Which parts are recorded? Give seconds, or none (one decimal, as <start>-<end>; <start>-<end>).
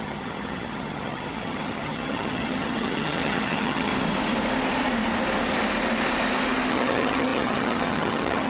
3.9-6.7